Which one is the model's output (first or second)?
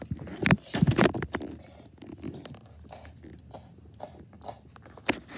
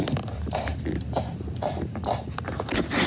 second